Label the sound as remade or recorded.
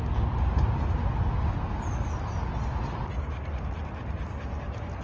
recorded